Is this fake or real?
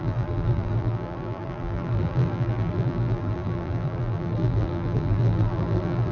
fake